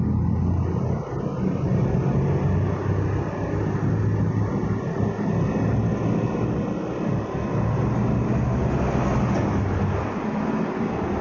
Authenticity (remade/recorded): recorded